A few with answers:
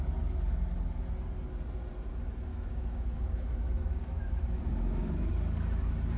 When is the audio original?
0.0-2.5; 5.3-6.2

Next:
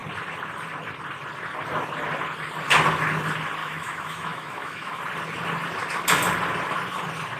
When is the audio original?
0.0-3.6; 5.0-7.4

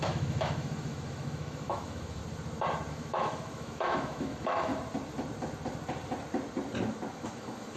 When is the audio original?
2.2-2.9; 4.7-7.1

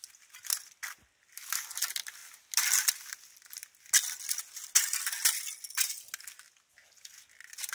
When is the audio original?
0.0-7.7

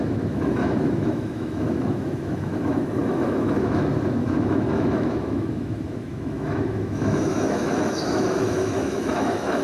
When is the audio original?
none